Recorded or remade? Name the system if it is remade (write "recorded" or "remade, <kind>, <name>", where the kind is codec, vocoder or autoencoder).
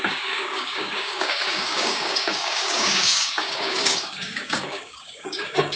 remade, codec, DAC